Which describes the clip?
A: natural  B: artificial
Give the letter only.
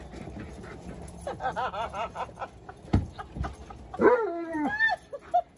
A